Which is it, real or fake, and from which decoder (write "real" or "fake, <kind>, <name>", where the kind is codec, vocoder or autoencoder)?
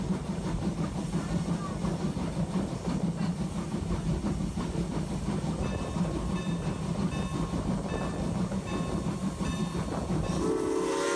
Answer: real